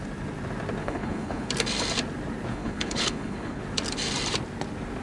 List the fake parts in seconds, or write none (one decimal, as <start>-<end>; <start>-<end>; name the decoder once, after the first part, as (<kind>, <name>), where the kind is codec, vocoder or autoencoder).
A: 0.8-1.5 (codec, HILCodec); 2.5-3.6

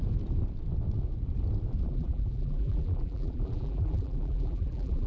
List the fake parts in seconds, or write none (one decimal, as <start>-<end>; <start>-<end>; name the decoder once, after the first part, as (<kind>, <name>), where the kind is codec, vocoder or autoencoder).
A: 1.9-5.1 (vocoder, BigVGAN v2)

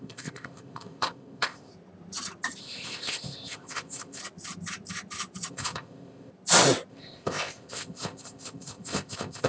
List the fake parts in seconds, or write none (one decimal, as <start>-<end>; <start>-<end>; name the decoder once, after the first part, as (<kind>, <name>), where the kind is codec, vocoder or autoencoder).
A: 0.0-1.7 (codec, ZipCodec); 2.6-4.2; 5.5-6.3; 6.9-9.5

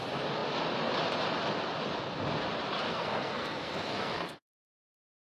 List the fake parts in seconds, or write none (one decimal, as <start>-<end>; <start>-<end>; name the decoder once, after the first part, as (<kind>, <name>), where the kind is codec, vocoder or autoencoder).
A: 2.9-5.0 (codec, SNAC)

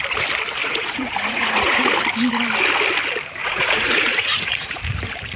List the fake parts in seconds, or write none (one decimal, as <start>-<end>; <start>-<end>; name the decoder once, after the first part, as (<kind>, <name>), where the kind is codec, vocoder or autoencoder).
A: 0.6-1.9 (vocoder, Vocos); 3.4-4.8

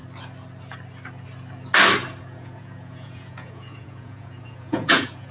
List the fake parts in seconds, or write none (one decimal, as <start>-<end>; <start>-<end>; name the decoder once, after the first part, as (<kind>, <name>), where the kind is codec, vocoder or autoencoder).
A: 2.2-5.3 (vocoder, Vocos)